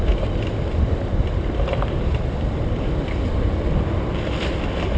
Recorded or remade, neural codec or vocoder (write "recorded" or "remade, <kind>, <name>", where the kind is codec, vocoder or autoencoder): recorded